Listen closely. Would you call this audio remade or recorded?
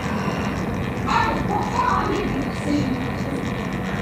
recorded